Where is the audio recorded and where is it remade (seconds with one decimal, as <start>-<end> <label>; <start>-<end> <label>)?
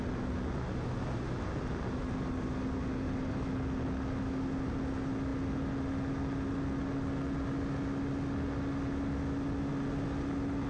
0.0-10.7 recorded